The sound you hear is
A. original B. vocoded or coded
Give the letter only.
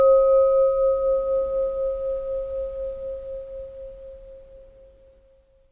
A